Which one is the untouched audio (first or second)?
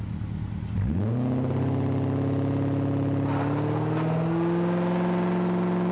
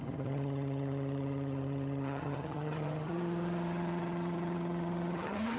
first